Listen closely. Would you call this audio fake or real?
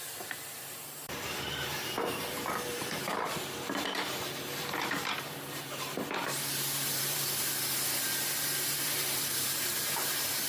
fake